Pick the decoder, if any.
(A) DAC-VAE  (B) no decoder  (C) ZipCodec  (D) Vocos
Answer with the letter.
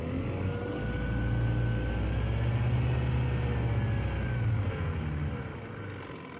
B